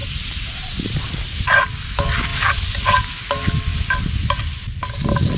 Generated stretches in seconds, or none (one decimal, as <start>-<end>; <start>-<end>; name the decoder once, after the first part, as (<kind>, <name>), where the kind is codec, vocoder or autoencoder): 0.0-1.0 (vocoder, BigVGAN v2)